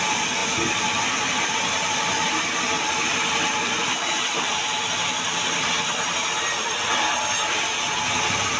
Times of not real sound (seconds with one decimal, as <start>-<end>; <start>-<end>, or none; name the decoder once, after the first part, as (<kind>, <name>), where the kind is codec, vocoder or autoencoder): 0.4-1.5 (vocoder, BigVGAN v2); 3.1-5.7

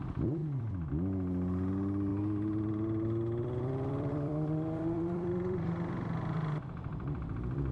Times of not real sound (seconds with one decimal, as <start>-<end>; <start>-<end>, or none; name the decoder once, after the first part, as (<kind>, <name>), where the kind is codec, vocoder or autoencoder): 0.0-7.7 (vocoder, BigVGAN v2)

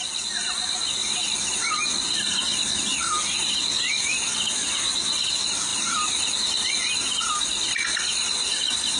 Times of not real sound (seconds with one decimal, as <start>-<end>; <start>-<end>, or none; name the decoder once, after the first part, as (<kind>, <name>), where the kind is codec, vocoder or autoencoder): 5.7-6.7 (vocoder, BigVGAN v2)

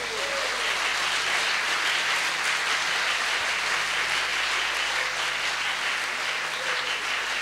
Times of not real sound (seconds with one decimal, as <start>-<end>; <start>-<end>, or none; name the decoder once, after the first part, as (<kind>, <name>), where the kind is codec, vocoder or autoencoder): none

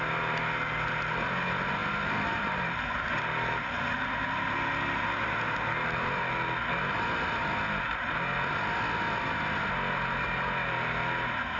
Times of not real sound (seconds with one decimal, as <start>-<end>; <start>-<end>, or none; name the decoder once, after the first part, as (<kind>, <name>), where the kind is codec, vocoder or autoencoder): 1.8-3.2 (vocoder, BigVGAN v2)

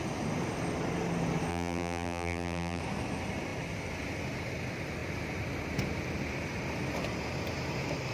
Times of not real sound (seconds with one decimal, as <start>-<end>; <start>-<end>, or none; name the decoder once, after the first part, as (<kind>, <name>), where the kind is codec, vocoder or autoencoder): 1.5-2.8 (vocoder, BigVGAN v2)

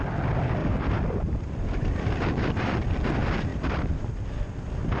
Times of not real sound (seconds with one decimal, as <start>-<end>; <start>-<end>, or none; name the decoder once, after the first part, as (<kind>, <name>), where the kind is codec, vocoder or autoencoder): 0.6-2.9 (vocoder, BigVGAN v2); 3.5-4.3